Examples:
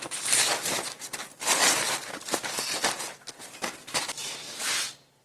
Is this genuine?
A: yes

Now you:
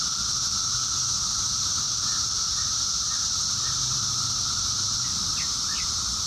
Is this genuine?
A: no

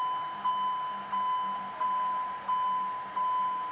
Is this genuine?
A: yes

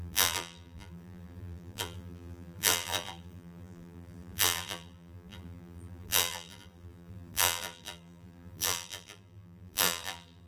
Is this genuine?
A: no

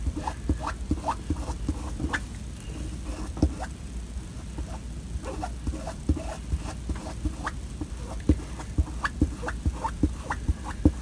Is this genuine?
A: yes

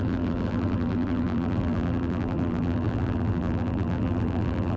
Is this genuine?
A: no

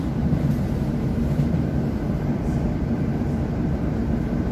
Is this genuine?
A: no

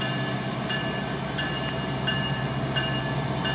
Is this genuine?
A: yes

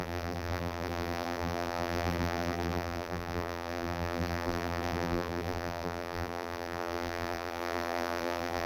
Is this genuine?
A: no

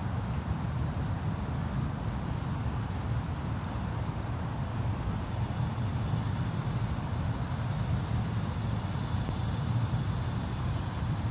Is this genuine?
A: yes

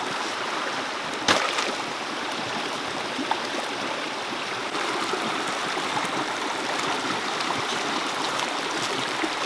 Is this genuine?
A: no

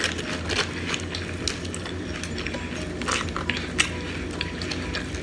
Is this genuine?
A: yes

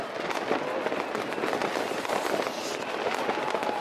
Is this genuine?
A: yes